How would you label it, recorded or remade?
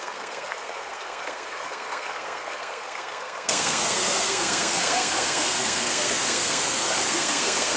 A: remade